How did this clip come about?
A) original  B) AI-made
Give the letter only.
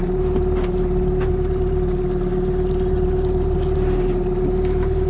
A